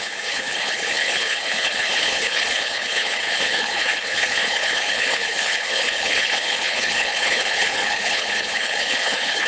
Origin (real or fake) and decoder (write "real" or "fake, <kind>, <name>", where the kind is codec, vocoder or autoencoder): fake, codec, HILCodec